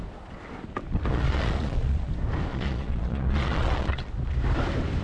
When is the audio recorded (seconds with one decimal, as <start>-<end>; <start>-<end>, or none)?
0.0-1.1; 2.1-2.5; 4.1-5.0